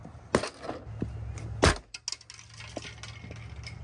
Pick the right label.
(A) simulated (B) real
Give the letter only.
B